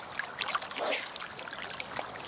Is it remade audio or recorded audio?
recorded